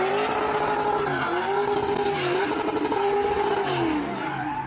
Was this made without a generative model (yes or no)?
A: yes